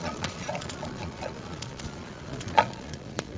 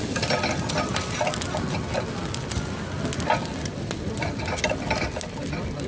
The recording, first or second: second